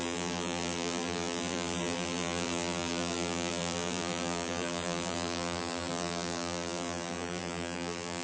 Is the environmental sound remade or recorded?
remade